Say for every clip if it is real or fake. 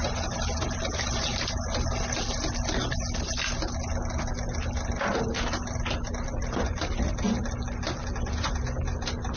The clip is real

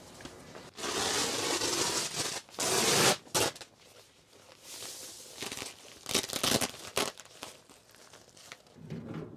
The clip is real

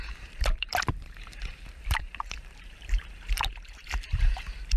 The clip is fake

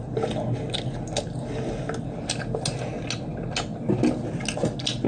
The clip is real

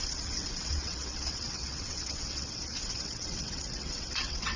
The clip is fake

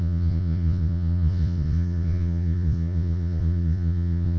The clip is fake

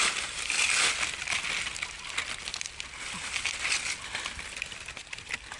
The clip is real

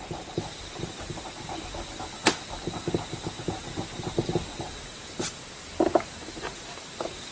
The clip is real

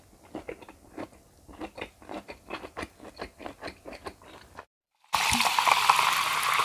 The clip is real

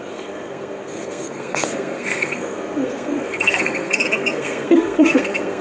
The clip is fake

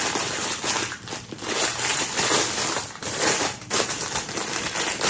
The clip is fake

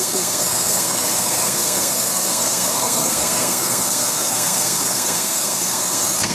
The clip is fake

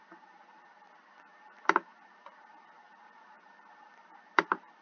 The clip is fake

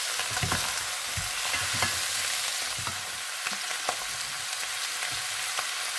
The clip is real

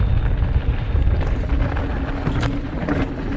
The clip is real